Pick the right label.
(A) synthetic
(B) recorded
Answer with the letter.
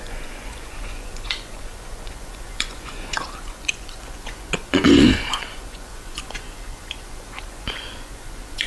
A